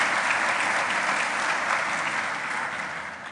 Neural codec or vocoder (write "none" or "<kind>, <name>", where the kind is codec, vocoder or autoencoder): none